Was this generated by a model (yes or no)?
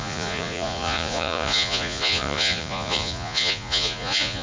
yes